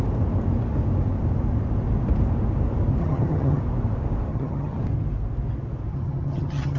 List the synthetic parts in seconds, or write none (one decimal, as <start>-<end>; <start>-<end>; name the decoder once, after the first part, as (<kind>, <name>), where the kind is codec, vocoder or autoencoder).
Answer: 3.0-3.6 (vocoder, HiFi-GAN); 4.3-4.8; 5.9-6.8